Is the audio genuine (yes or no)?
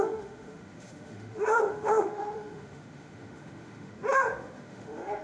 no